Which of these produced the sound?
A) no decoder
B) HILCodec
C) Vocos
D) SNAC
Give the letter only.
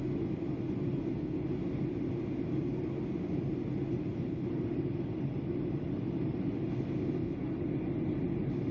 A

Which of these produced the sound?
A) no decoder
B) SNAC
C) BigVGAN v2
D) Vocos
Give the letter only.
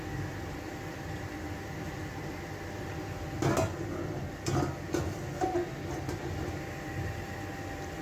A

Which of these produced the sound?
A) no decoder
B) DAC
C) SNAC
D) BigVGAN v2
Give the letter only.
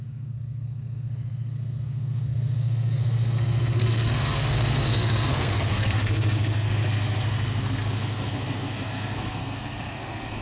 C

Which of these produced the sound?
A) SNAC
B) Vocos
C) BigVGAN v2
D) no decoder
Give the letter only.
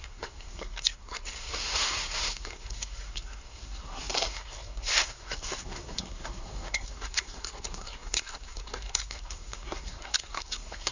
A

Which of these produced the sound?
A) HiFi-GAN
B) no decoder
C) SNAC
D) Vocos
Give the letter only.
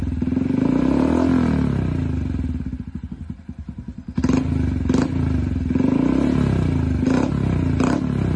B